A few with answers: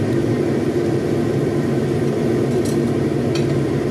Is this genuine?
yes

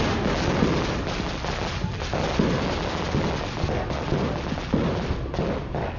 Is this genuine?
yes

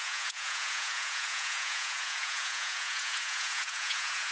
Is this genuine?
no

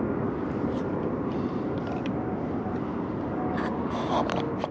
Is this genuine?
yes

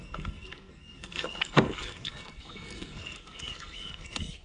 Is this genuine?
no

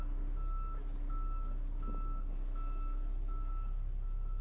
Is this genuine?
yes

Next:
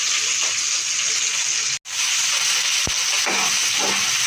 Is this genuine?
yes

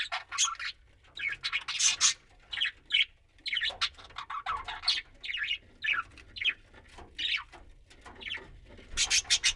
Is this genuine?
yes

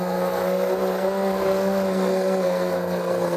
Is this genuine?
no